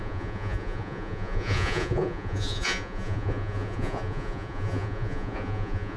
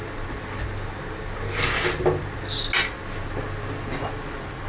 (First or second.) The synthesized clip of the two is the first